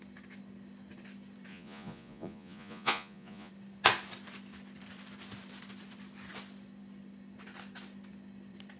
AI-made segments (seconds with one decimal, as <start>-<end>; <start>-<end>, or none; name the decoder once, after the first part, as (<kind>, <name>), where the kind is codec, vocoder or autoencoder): 1.5-3.5 (vocoder, Vocos)